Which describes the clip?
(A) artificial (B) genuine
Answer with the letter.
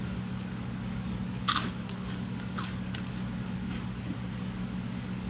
A